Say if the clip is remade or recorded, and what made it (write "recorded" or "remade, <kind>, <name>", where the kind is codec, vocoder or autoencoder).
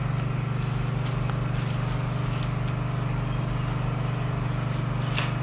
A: recorded